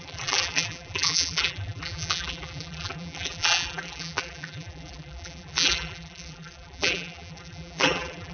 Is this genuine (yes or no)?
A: no